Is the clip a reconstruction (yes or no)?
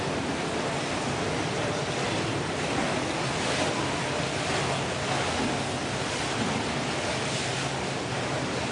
no